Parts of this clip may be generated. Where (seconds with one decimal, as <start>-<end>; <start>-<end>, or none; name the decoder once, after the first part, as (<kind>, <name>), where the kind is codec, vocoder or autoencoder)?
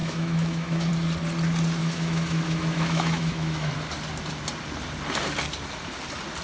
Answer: 0.0-0.9 (autoencoder, DAC-VAE); 1.8-3.7